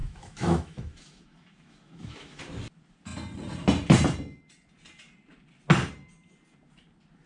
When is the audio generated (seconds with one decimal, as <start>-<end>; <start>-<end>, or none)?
0.0-2.4